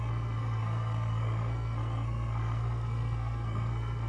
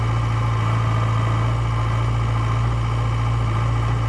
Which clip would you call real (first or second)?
second